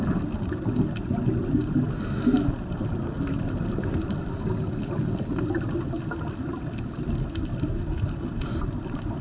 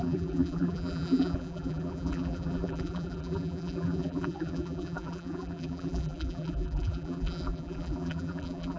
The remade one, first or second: second